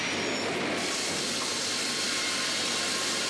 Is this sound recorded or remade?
recorded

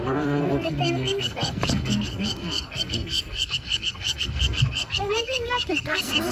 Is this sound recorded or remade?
remade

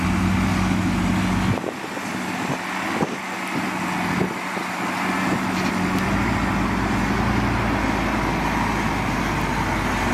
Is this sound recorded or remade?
recorded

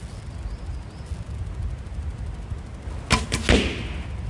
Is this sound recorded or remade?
recorded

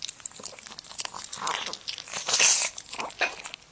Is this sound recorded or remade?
recorded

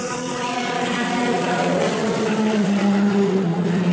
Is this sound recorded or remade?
remade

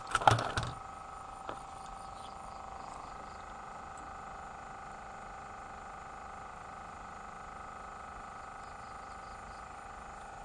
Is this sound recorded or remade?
recorded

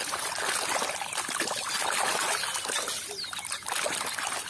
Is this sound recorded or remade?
recorded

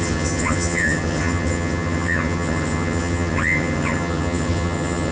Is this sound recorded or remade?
remade